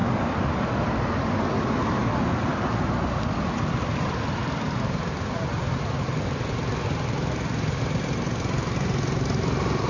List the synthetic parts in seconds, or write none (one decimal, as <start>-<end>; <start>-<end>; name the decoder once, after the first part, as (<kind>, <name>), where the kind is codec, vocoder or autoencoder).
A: none